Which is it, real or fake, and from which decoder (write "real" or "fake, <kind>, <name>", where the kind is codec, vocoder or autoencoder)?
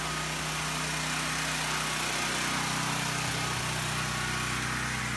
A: real